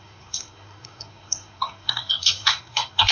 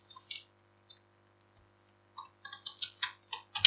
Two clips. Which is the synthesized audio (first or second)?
first